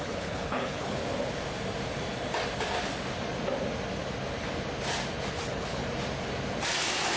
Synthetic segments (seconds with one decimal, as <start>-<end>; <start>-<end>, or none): 0.0-1.0; 5.3-5.8